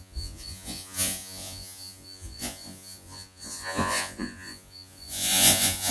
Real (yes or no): no